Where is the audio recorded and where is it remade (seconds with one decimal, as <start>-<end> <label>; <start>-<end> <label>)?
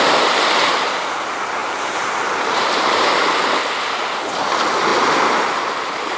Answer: 0.0-1.6 recorded; 1.6-3.1 remade; 3.1-6.2 recorded